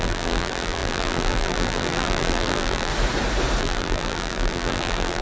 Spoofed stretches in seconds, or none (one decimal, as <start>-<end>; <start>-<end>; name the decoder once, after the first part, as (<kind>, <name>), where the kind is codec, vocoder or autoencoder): 0.0-2.9 (vocoder, BigVGAN v2); 3.6-5.2

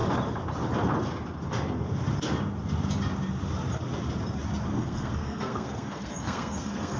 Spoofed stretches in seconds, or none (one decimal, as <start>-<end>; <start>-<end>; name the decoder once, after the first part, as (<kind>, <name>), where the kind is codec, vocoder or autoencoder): 4.7-7.0 (codec, SNAC)

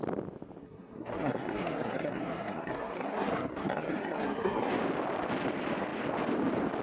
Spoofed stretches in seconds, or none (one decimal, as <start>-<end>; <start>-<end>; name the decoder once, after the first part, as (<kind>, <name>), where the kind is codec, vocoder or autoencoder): 0.6-4.7 (codec, SNAC)

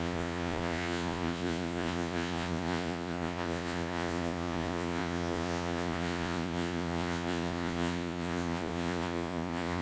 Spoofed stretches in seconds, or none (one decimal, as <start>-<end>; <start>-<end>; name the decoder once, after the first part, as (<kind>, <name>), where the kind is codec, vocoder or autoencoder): 0.0-9.8 (vocoder, Vocos)